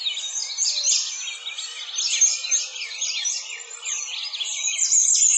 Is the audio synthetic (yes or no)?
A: no